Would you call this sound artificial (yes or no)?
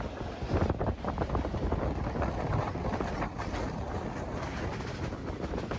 no